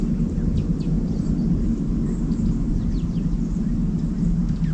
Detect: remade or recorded recorded